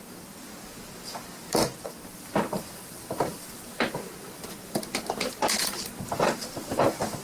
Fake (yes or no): no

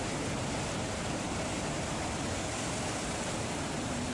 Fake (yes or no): no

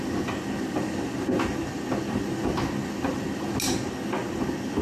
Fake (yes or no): no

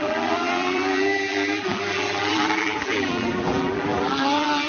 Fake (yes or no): yes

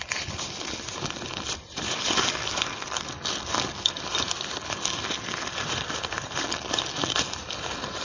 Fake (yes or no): no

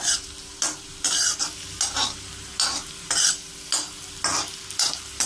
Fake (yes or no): no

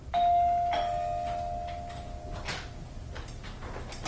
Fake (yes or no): no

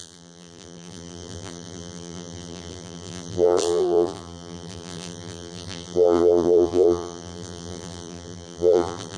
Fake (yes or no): yes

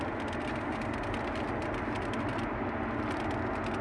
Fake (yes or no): no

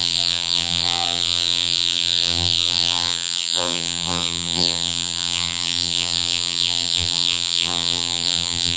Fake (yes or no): yes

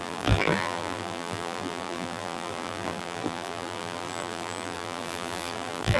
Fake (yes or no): yes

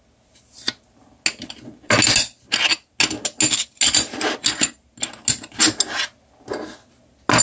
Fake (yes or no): no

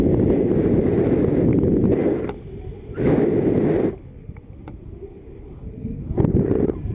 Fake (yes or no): no